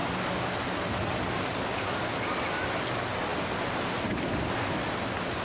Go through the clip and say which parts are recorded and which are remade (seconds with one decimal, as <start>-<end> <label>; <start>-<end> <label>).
0.0-5.4 recorded